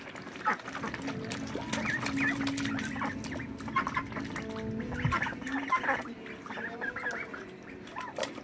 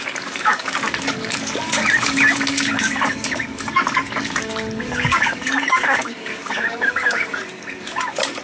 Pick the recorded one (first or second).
first